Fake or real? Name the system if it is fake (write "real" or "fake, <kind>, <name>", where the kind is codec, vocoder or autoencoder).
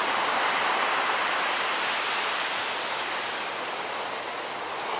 real